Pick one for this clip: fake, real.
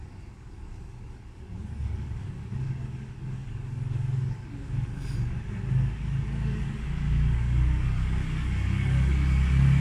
fake